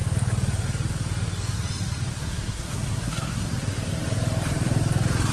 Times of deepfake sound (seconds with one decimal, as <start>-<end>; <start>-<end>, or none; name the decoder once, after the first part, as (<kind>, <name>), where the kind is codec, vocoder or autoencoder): 2.1-3.5 (codec, SNAC)